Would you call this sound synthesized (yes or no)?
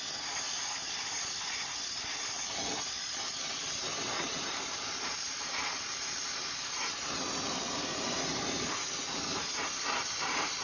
yes